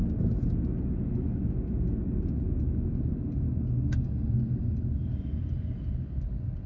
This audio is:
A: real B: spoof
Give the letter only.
A